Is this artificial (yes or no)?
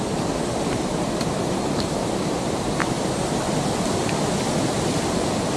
yes